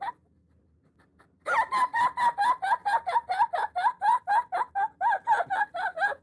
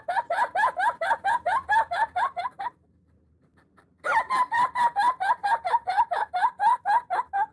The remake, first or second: second